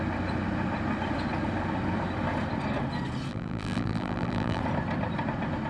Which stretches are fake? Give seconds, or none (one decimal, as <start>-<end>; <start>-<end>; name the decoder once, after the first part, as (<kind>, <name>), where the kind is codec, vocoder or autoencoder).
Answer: 3.3-4.6 (vocoder, BigVGAN v2)

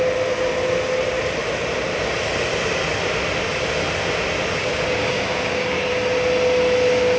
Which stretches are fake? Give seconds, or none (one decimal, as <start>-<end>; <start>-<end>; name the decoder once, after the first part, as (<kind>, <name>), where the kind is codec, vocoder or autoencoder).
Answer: 4.6-5.9 (codec, DAC)